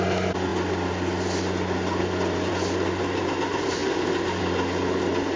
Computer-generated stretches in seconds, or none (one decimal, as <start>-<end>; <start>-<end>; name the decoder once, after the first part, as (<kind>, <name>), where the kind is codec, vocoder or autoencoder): none